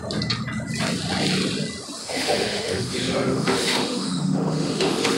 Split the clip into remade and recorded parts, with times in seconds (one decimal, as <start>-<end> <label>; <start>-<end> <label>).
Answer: 0.0-2.0 recorded; 2.0-5.2 remade

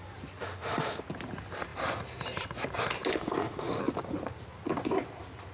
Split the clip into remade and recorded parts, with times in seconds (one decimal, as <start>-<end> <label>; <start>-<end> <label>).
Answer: 0.0-0.4 recorded; 0.4-1.0 remade; 1.0-3.1 recorded; 3.1-3.8 remade; 3.8-5.5 recorded

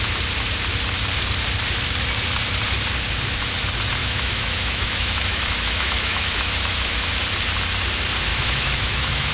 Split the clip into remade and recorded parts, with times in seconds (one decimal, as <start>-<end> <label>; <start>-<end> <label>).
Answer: 0.0-4.0 recorded; 4.0-7.1 remade; 7.1-8.3 recorded; 8.3-9.3 remade

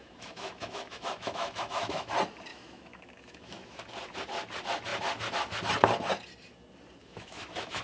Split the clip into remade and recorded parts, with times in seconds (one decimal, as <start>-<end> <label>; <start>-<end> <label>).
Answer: 0.0-2.1 remade; 2.1-2.5 recorded; 2.5-3.8 remade; 3.8-7.0 recorded; 7.0-7.8 remade